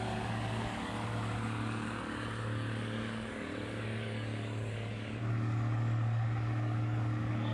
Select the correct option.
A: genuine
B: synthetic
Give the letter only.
B